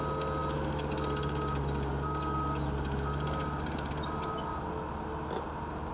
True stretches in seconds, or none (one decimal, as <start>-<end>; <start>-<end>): 0.0-5.9